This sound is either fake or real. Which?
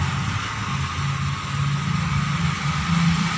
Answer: real